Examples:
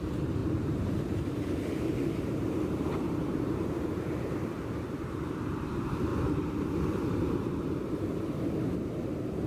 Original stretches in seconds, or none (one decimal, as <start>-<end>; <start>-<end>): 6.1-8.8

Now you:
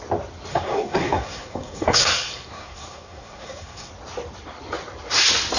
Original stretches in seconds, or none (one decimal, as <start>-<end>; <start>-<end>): 0.0-0.5; 3.9-5.6

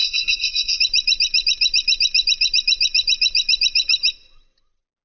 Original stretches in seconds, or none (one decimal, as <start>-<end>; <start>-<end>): 0.8-5.0

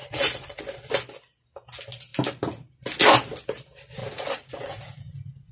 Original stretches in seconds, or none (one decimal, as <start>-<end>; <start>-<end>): 0.6-4.0

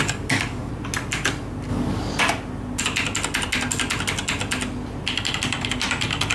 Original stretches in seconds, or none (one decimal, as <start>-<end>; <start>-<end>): 0.7-1.7; 2.2-6.3